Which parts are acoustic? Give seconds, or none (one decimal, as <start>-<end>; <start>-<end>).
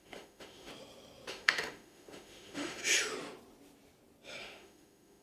0.7-1.3; 2.8-4.4